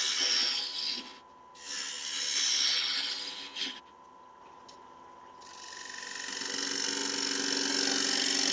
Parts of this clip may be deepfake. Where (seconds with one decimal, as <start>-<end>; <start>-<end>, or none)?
none